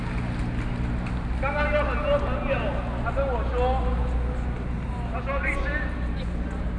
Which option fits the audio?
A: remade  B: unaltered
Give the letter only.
B